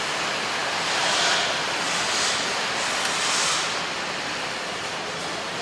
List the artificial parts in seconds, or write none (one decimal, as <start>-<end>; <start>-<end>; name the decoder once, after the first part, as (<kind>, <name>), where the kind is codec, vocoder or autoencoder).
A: none